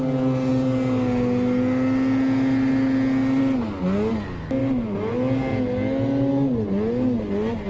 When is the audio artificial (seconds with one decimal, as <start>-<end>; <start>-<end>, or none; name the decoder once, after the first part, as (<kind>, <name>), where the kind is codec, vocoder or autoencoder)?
none